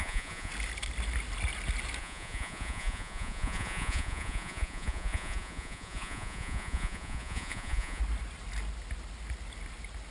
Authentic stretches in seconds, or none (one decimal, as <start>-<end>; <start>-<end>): 0.5-2.0; 8.0-10.1

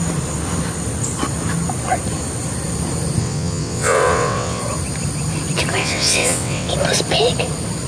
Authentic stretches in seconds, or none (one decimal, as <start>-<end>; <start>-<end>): 0.0-3.2; 4.6-5.8; 6.7-7.9

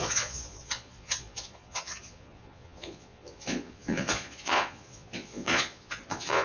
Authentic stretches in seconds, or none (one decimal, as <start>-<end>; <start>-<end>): none

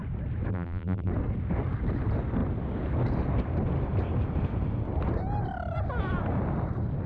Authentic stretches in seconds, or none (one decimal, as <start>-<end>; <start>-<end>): 0.0-0.5; 1.1-7.1

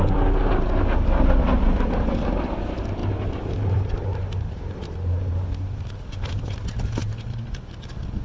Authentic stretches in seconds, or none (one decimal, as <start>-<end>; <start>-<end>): 0.0-8.2

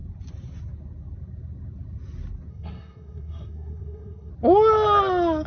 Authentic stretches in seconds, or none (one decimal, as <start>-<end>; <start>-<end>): 0.0-2.5; 4.3-5.5